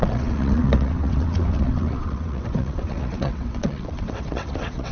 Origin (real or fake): fake